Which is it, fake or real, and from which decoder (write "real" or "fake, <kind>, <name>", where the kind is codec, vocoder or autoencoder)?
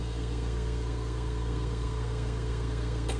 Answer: fake, codec, SNAC